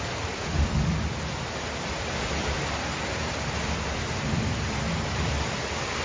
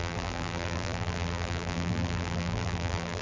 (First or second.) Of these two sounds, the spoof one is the second